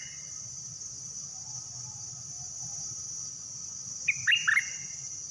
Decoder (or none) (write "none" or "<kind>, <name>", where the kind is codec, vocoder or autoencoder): none